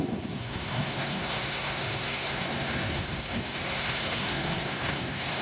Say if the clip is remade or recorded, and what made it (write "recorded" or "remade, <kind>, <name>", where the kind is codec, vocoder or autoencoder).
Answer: remade, codec, SNAC